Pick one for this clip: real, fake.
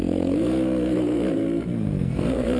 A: fake